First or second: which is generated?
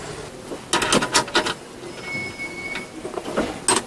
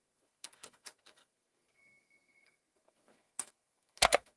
second